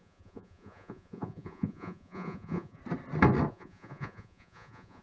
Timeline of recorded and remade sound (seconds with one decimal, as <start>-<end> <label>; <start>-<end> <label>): 0.0-2.8 remade; 2.8-3.5 recorded; 3.5-5.0 remade